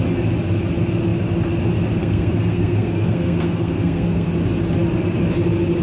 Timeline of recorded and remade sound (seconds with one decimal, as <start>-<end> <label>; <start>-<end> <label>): 0.0-2.0 recorded; 2.0-4.3 remade; 4.3-5.8 recorded